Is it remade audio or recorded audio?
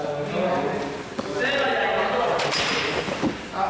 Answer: recorded